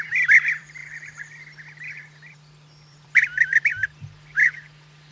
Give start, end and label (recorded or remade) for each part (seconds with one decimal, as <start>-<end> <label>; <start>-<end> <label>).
0.0-3.7 remade; 3.7-5.1 recorded